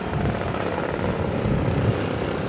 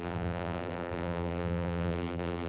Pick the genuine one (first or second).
first